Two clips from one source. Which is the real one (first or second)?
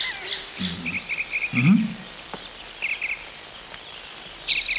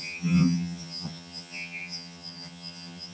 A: first